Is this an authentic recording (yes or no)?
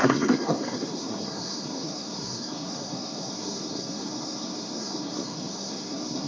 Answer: no